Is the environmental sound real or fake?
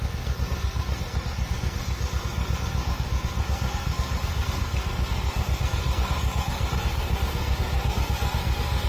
fake